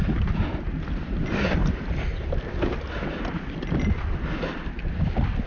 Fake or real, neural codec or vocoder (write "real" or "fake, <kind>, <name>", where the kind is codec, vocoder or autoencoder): real